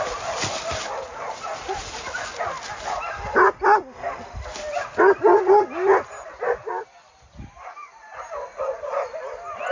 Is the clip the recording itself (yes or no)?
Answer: yes